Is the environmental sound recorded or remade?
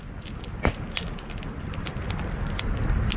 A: recorded